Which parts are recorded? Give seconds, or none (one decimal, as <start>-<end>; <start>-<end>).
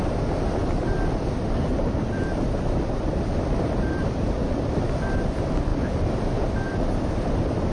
0.0-0.6; 4.2-5.7; 7.1-7.7